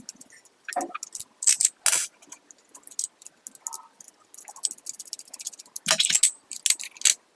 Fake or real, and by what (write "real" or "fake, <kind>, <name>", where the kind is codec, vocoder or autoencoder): real